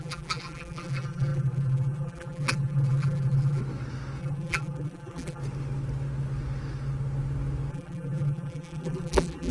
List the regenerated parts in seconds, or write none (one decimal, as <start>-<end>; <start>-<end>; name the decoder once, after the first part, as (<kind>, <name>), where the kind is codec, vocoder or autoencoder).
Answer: 0.0-3.6 (vocoder, BigVGAN v2); 4.2-5.4; 7.7-9.5